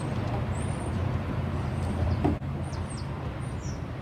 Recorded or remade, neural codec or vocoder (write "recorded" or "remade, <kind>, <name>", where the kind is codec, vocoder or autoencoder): remade, vocoder, BigVGAN v2